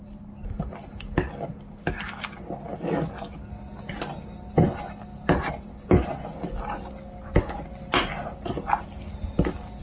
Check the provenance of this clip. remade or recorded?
recorded